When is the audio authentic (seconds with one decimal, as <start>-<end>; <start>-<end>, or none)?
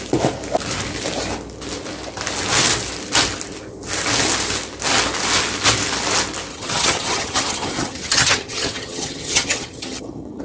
0.0-6.5